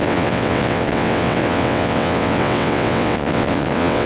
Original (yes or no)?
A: no